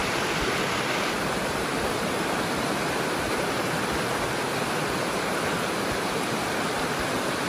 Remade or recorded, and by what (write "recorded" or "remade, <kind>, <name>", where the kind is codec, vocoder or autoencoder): recorded